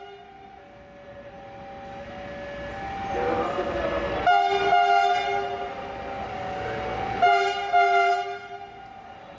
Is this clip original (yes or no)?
yes